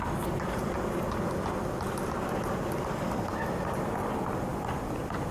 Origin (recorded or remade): recorded